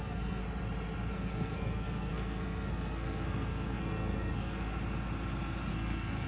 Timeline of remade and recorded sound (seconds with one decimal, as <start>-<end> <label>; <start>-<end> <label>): 0.0-0.4 remade; 0.4-1.1 recorded; 1.1-4.8 remade; 4.8-5.7 recorded; 5.7-6.3 remade